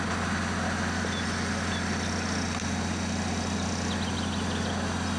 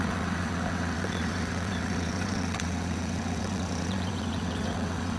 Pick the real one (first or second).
first